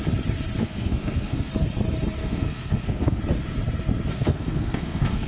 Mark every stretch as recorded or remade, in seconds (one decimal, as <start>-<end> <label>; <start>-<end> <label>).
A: 0.0-0.6 recorded; 0.6-1.5 remade; 1.5-2.2 recorded; 2.2-3.2 remade; 3.2-4.1 recorded; 4.1-5.3 remade